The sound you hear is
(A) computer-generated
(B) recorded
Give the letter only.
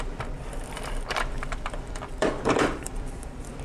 A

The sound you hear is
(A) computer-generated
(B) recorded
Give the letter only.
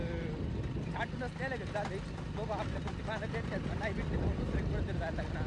B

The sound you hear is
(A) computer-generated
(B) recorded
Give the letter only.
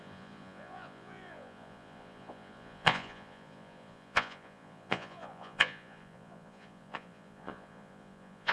A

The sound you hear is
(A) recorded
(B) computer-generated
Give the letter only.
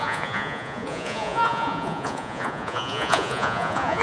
B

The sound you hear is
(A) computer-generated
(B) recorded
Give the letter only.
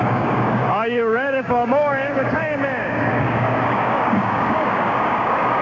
A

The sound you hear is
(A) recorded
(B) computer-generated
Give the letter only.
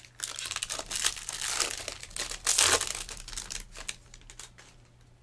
A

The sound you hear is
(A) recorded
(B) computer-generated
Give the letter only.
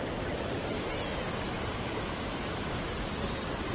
A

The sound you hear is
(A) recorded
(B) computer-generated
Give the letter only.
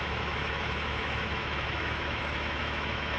B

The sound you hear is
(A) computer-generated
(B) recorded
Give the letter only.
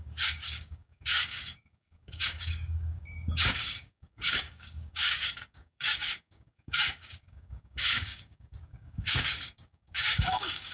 A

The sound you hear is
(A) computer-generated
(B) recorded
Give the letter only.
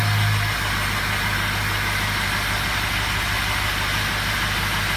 B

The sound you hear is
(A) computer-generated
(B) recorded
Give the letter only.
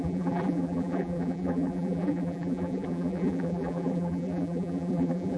A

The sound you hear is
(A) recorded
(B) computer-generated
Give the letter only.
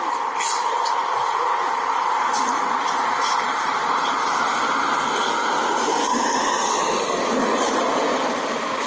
A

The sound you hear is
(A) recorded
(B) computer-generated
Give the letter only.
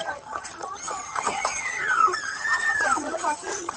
B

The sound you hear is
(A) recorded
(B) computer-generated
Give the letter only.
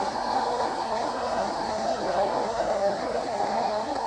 B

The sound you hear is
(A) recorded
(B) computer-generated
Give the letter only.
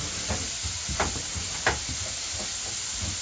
B